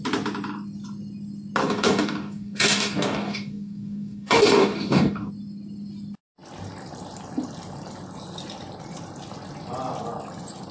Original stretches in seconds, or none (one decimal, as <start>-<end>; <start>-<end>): 0.0-1.6; 5.3-10.7